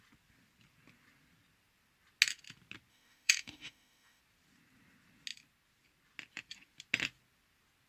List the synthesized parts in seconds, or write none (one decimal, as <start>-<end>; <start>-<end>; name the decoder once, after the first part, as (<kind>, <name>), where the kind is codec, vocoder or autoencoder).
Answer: 2.9-4.2 (autoencoder, DAC-VAE)

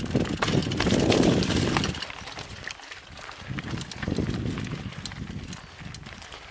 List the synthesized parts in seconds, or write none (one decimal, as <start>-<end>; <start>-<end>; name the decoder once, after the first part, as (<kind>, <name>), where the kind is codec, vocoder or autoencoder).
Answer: 0.6-3.6 (vocoder, BigVGAN v2)

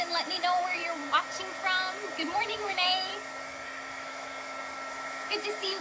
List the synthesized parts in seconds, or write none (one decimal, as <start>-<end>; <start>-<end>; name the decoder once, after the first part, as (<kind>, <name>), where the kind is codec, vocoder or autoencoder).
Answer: 0.0-0.8 (autoencoder, DAC-VAE); 2.4-3.1; 3.9-4.3; 4.9-5.8

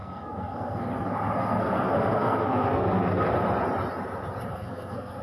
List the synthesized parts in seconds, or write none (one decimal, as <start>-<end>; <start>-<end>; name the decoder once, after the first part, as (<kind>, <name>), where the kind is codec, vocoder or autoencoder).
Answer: 0.0-3.1 (codec, SNAC); 4.5-5.2

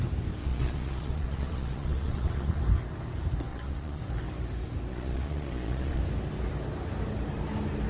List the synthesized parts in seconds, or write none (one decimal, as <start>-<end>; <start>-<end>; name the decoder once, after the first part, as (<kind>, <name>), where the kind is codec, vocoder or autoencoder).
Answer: 0.4-2.6 (vocoder, Vocos); 3.5-4.0; 4.9-6.0

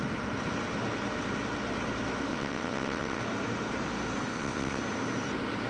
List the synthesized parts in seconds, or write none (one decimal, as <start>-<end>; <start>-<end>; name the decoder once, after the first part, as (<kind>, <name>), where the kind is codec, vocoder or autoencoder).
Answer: 2.3-3.2 (vocoder, WaveNeXt); 4.3-4.8

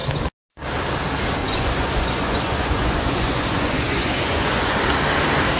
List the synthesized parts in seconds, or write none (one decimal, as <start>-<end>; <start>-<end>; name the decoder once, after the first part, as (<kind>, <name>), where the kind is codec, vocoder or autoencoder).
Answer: 1.4-4.8 (vocoder, Vocos)